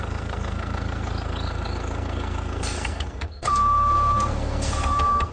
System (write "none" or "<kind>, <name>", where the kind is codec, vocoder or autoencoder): codec, SNAC